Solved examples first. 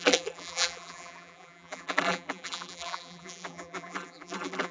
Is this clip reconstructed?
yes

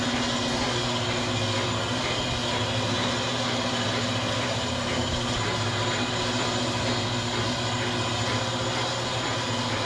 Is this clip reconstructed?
no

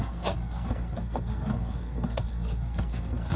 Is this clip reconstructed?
yes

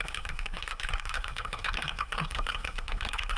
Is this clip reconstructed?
yes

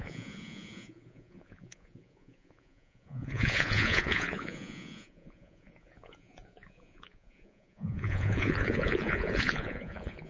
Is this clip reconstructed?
yes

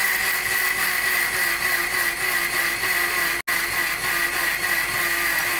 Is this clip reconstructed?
no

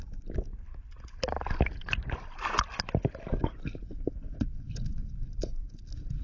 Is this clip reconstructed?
no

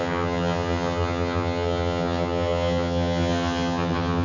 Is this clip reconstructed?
yes